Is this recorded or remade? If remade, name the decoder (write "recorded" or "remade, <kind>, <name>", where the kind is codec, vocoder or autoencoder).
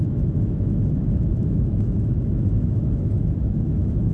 remade, autoencoder, DAC-VAE